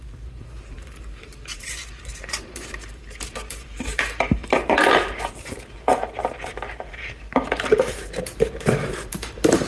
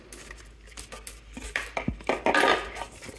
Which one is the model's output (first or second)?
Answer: first